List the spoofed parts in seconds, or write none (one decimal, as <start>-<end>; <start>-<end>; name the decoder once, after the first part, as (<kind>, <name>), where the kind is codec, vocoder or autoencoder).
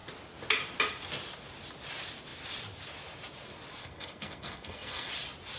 3.8-5.1 (codec, SNAC)